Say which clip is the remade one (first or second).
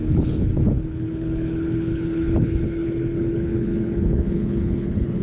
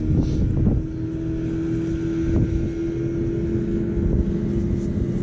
first